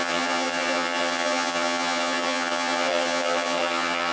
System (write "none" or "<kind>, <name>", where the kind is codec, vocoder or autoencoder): vocoder, HiFi-GAN